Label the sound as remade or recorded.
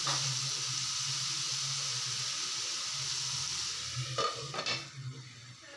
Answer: recorded